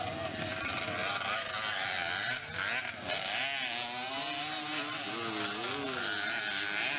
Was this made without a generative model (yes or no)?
yes